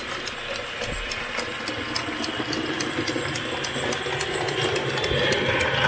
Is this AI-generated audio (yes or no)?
no